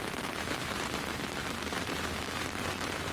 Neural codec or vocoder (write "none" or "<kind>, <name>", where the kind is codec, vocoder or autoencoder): vocoder, BigVGAN v2